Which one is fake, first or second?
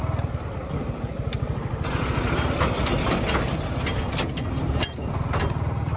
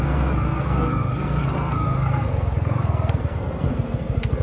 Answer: second